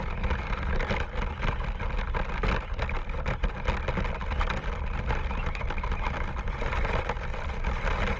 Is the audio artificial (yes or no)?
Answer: no